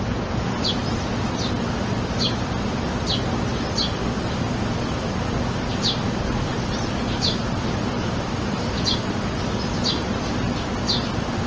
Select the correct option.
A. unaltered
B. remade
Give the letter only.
A